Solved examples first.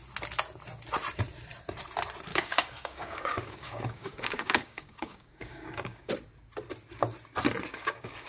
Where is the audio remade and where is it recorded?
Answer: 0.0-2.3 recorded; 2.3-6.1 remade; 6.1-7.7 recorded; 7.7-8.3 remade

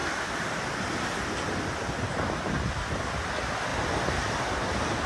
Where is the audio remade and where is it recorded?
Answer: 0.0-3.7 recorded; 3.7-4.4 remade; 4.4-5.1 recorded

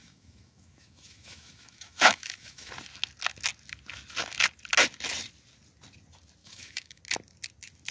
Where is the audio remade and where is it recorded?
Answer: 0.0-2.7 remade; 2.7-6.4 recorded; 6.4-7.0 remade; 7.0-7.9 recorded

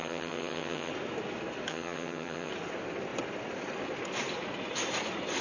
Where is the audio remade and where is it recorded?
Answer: 0.0-0.9 remade; 0.9-1.7 recorded; 1.7-2.5 remade; 2.5-5.4 recorded